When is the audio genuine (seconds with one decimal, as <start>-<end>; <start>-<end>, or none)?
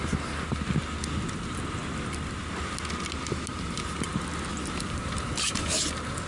0.0-3.5; 4.1-4.5; 5.8-6.3